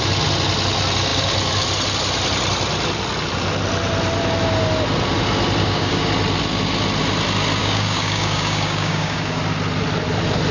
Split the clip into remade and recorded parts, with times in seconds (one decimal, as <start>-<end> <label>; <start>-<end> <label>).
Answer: 0.0-5.6 recorded; 5.6-6.1 remade; 6.1-7.6 recorded; 7.6-9.4 remade; 9.4-10.5 recorded